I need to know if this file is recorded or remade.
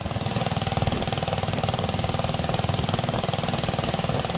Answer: recorded